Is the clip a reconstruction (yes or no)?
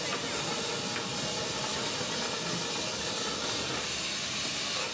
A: no